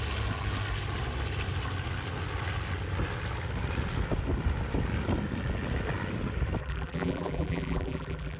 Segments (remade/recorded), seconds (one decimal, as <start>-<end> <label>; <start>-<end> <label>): 0.0-6.6 recorded; 6.6-8.4 remade